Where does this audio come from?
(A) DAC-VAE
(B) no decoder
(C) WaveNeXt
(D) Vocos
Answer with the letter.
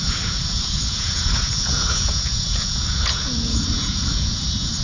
D